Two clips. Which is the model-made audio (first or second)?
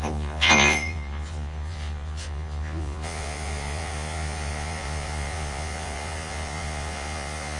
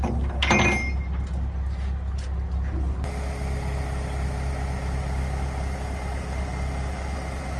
first